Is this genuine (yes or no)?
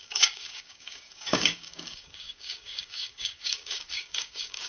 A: no